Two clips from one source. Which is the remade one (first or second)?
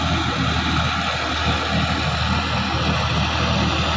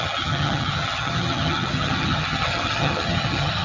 second